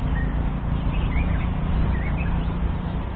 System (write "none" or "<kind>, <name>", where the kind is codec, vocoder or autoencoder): vocoder, BigVGAN v2